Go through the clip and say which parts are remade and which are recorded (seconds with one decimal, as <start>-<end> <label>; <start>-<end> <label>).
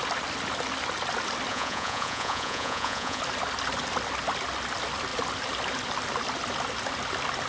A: 0.0-1.5 recorded; 1.5-3.2 remade; 3.2-7.5 recorded